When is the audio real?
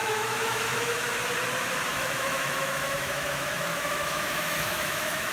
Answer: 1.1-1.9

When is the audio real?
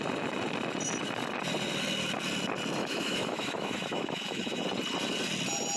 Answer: 0.0-2.8; 4.6-5.8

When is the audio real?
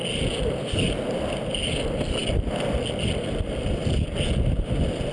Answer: 0.0-5.1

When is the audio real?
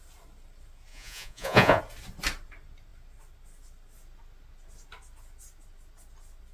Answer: 0.0-0.9; 1.8-6.5